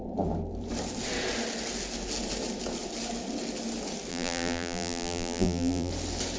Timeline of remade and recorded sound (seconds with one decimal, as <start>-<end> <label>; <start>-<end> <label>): 0.0-4.1 recorded; 4.1-5.9 remade; 5.9-6.4 recorded